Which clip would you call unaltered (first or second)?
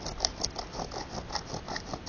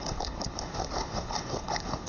first